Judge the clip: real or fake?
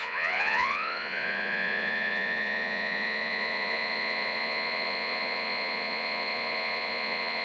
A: fake